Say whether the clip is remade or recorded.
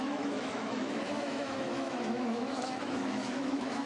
remade